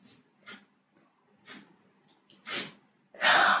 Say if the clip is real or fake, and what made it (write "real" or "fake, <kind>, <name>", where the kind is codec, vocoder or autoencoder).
real